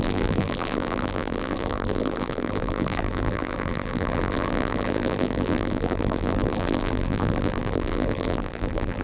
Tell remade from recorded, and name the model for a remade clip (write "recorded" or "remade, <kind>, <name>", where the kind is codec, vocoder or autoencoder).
remade, vocoder, BigVGAN v2